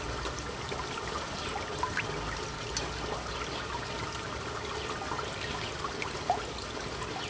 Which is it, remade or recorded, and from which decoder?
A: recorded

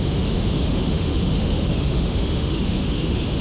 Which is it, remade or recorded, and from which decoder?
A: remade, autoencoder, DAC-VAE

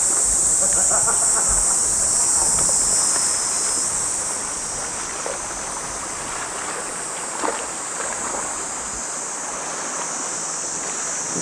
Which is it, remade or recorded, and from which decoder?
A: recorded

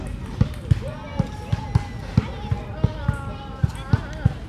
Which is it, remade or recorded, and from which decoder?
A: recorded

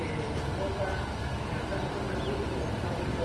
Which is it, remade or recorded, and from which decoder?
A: recorded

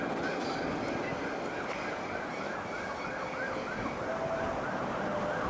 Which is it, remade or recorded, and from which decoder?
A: recorded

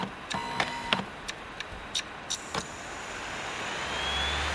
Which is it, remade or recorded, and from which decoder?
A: recorded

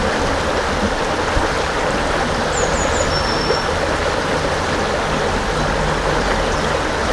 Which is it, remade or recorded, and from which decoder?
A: recorded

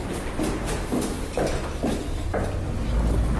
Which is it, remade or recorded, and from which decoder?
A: recorded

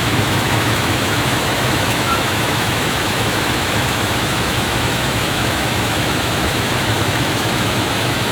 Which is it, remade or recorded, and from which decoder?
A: remade, autoencoder, DAC-VAE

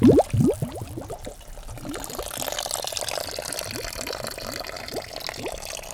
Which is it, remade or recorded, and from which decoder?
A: recorded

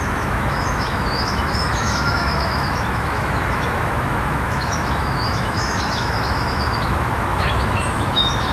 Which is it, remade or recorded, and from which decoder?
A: remade, autoencoder, DAC-VAE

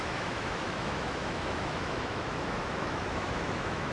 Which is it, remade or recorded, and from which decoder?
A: remade, autoencoder, DAC-VAE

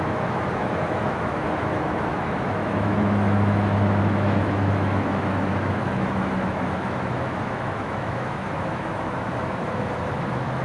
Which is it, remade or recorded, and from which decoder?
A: remade, autoencoder, DAC-VAE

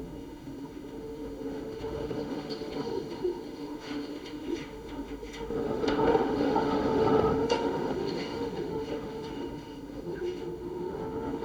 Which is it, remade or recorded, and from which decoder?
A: remade, autoencoder, DAC-VAE